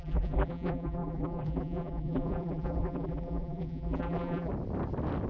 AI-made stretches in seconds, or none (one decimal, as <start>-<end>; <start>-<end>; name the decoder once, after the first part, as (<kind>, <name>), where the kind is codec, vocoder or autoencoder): 0.0-4.5 (vocoder, BigVGAN v2)